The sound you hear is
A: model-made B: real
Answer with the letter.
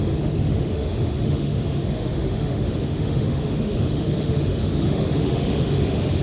A